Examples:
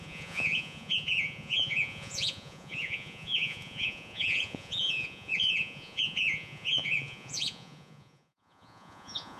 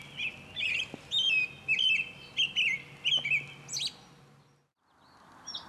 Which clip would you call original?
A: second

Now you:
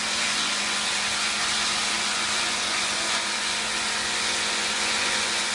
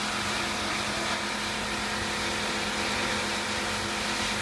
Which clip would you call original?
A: second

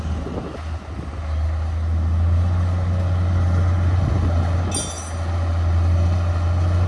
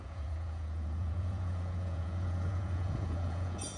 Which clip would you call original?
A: first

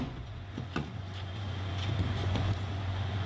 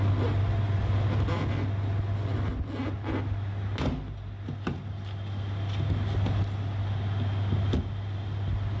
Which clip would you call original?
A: second